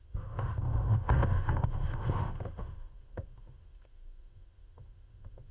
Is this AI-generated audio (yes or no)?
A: yes